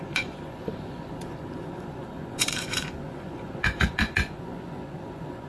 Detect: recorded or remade remade